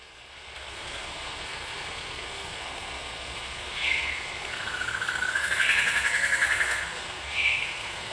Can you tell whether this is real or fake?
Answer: fake